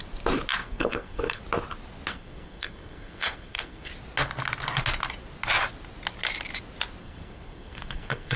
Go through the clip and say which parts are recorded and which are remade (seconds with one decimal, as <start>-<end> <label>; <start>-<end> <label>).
0.0-0.6 recorded; 0.6-1.4 remade; 1.4-2.1 recorded; 2.1-3.9 remade; 3.9-7.0 recorded; 7.0-8.4 remade